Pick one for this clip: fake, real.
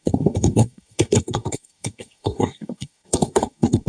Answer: fake